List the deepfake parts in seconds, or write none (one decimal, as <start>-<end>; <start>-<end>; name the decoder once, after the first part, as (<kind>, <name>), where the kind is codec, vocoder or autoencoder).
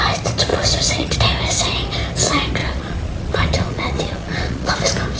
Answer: 0.5-1.1 (vocoder, Vocos); 2.6-4.7